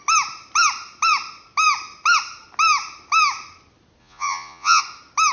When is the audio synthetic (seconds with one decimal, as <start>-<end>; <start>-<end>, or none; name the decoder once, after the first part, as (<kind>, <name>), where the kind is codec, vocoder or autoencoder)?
4.0-4.8 (vocoder, Vocos)